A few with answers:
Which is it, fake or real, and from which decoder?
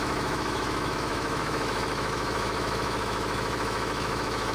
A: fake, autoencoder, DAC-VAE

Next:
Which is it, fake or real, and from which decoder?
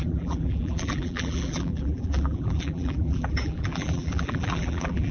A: fake, vocoder, BigVGAN v2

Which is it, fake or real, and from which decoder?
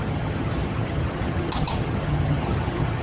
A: fake, vocoder, HiFi-GAN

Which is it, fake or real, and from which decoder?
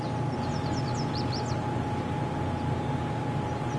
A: real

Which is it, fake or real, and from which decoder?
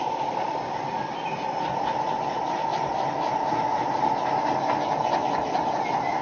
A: real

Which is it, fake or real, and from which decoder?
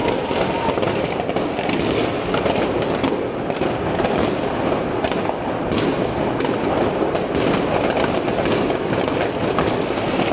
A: real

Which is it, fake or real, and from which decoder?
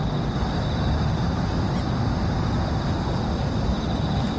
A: real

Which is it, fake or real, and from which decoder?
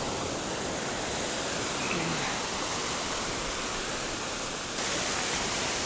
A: real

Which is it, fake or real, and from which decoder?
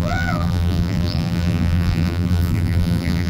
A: fake, vocoder, BigVGAN v2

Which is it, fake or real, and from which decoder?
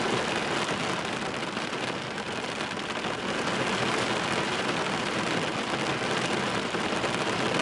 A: real